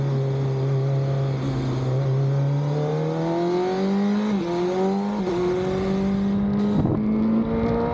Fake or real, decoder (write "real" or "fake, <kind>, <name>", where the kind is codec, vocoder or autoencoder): real